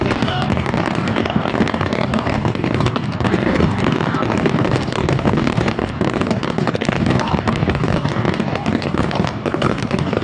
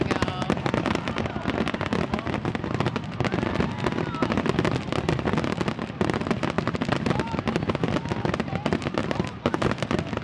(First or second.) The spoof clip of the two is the first